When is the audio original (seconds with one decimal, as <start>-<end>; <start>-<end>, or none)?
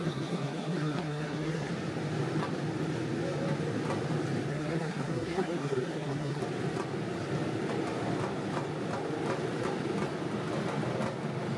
1.7-4.5; 6.4-11.6